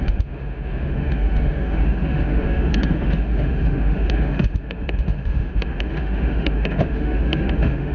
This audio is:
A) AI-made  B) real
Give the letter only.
A